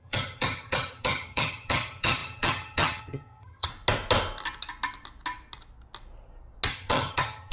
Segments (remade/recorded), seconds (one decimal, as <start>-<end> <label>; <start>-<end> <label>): 0.0-3.7 remade; 3.7-6.7 recorded; 6.7-7.5 remade